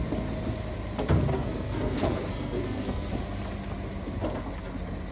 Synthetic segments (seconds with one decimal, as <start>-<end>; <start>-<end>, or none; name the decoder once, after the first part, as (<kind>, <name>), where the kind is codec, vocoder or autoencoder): 1.3-3.1 (codec, SNAC)